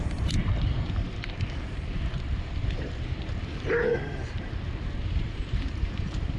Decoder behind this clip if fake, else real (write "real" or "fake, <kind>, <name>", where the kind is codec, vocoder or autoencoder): fake, vocoder, BigVGAN v2